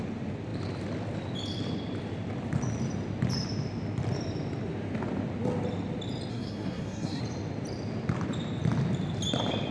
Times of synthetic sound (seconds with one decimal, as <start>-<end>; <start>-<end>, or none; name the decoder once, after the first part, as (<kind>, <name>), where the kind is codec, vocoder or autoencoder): 6.3-7.2 (codec, SNAC)